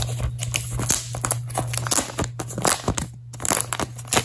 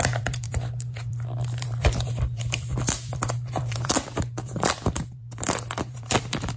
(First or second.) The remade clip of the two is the second